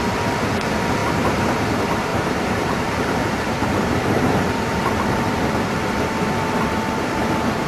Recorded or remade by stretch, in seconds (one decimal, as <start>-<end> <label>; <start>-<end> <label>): 0.0-2.1 recorded; 2.1-5.4 remade; 5.4-7.7 recorded